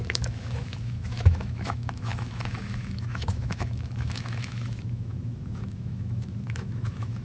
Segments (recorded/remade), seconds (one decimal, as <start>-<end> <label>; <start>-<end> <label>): 0.0-7.2 remade